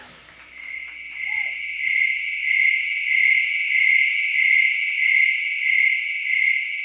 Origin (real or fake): real